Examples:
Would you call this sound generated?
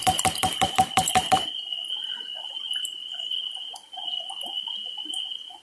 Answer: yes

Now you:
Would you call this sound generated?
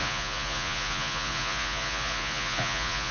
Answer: yes